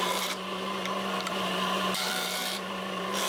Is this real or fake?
fake